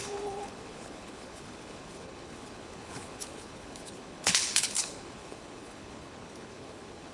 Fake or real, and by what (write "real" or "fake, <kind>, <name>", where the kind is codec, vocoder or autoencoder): fake, codec, HILCodec